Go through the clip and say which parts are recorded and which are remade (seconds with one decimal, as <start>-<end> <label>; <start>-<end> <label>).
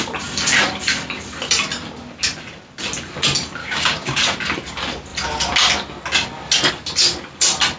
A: 0.0-3.6 recorded; 3.6-4.2 remade; 4.2-7.8 recorded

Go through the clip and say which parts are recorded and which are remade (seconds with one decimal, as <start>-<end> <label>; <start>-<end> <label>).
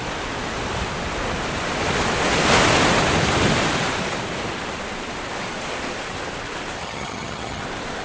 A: 0.0-6.8 recorded; 6.8-7.6 remade; 7.6-8.0 recorded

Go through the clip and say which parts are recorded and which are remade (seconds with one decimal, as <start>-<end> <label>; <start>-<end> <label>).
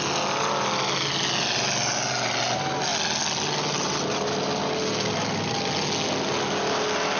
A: 0.0-7.2 recorded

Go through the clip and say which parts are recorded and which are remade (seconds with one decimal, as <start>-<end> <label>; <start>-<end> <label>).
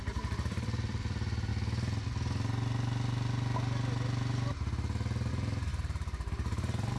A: 0.0-1.5 remade; 1.5-5.3 recorded; 5.3-7.0 remade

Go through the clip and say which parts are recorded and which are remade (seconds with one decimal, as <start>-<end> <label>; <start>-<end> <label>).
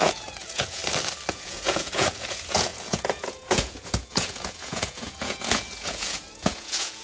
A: 0.0-0.8 remade; 0.8-1.3 recorded; 1.3-7.0 remade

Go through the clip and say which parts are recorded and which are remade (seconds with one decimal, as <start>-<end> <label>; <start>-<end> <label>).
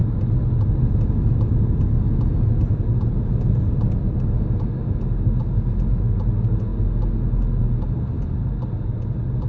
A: 0.0-9.5 recorded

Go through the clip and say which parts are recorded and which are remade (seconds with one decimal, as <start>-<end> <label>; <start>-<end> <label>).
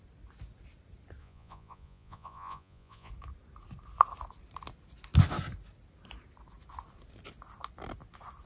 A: 0.0-1.2 recorded; 1.2-3.1 remade; 3.1-8.5 recorded